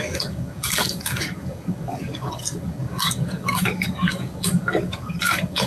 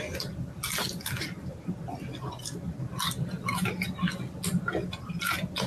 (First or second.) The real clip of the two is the second